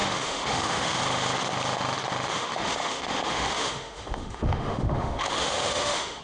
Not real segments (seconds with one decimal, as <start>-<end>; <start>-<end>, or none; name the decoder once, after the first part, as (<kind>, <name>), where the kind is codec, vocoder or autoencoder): 0.0-1.0 (autoencoder, DAC-VAE); 2.3-6.2